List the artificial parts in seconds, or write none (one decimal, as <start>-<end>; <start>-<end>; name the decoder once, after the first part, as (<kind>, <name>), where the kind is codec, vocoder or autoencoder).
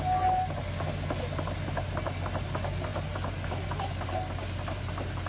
none